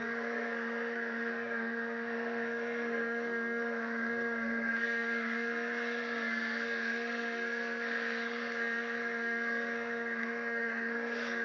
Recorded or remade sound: remade